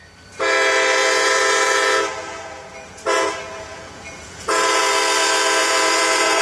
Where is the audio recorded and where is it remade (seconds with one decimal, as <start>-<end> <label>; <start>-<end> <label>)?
0.0-1.0 recorded; 1.0-4.8 remade; 4.8-5.6 recorded; 5.6-6.4 remade